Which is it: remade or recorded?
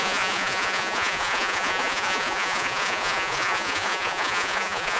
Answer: remade